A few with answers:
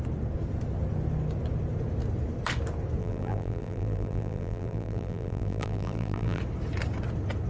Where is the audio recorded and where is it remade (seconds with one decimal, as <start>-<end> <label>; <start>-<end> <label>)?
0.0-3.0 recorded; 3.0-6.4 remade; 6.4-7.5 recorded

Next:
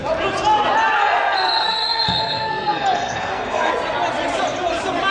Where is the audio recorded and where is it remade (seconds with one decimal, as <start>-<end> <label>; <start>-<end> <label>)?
0.0-1.0 recorded; 1.0-3.7 remade; 3.7-5.1 recorded

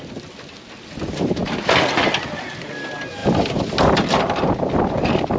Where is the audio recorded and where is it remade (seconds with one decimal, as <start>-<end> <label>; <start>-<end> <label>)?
0.0-3.2 recorded; 3.2-4.2 remade; 4.2-5.4 recorded

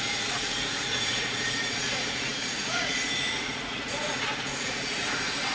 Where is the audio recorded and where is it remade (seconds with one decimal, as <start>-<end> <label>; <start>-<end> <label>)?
0.0-5.5 remade

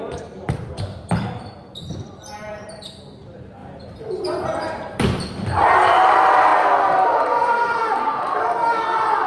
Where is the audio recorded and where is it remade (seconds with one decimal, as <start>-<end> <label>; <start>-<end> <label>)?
0.0-3.6 remade; 3.6-4.2 recorded; 4.2-6.5 remade; 6.5-8.1 recorded; 8.1-9.3 remade